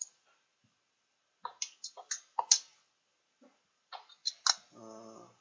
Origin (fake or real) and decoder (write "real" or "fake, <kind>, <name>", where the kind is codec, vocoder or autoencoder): real